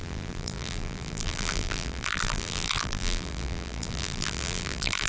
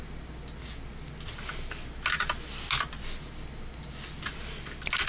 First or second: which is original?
second